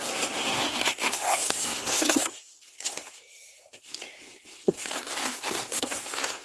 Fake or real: fake